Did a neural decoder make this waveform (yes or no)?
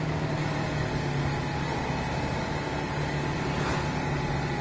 no